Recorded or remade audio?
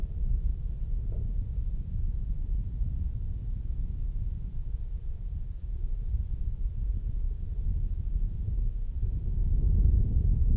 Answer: remade